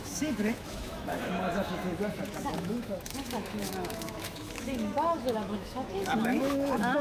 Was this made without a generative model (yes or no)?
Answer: no